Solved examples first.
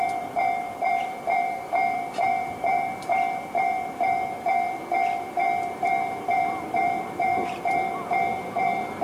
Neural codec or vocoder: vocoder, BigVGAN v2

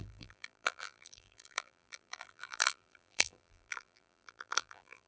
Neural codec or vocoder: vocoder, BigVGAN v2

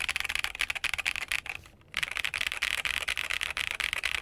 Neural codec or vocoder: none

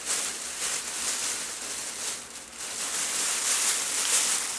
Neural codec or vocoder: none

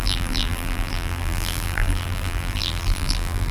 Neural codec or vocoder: vocoder, BigVGAN v2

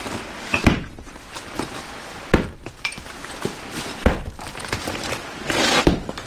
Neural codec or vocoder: none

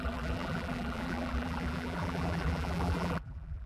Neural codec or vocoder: vocoder, BigVGAN v2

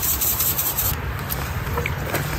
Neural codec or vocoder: vocoder, BigVGAN v2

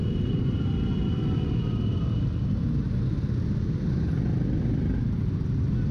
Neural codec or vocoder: none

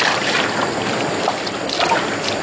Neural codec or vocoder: vocoder, BigVGAN v2